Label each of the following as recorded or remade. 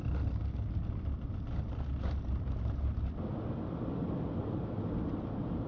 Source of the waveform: recorded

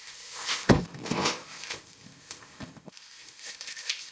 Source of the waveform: remade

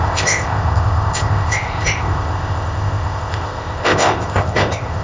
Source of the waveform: remade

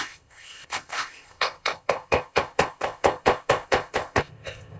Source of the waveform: remade